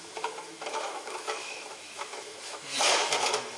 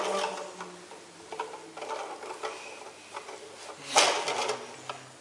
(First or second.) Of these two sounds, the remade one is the first